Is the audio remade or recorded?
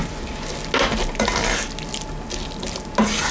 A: recorded